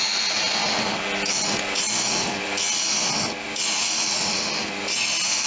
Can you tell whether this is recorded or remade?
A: recorded